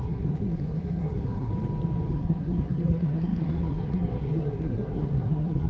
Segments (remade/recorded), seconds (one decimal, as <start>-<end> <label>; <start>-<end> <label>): 0.0-1.5 remade; 1.5-2.1 recorded; 2.1-5.7 remade